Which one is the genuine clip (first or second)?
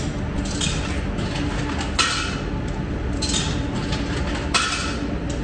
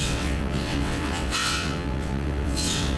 first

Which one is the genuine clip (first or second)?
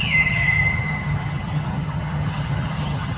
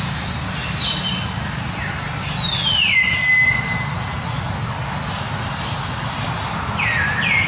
second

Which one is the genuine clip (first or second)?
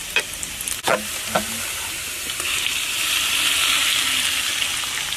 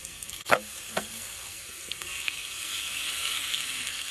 first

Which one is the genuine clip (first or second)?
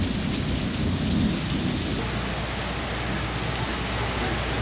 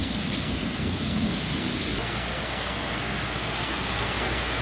first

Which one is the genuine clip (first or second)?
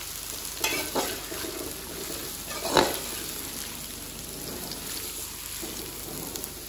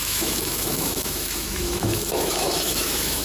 first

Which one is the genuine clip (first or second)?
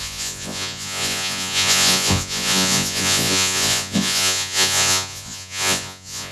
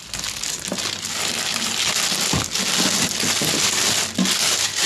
second